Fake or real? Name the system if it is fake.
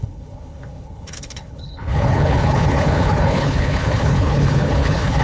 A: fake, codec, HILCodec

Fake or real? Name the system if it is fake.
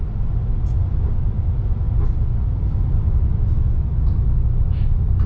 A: real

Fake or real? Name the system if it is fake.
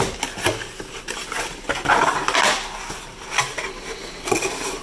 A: real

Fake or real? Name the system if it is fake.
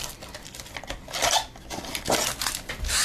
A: real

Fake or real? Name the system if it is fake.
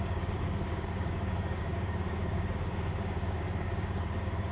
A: fake, codec, DAC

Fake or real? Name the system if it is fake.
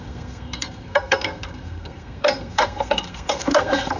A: fake, codec, SNAC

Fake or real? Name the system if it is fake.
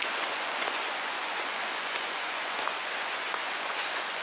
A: fake, vocoder, Vocos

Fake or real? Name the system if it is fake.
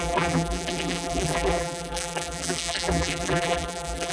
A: fake, vocoder, BigVGAN v2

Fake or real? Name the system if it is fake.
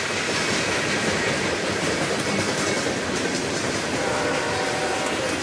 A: real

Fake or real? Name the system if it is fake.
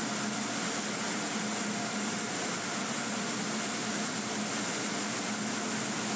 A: real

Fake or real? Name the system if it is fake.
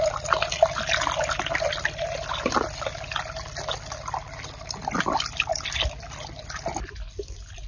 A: real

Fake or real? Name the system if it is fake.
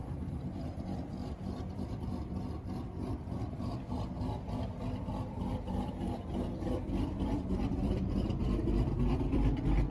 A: fake, vocoder, BigVGAN v2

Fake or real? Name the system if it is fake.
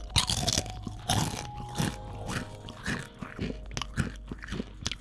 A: real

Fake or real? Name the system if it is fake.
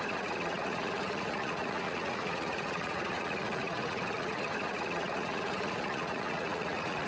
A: fake, vocoder, Vocos